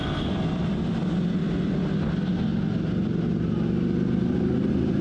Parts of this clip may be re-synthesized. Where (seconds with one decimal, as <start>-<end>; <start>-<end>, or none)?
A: 0.0-1.4; 4.4-5.0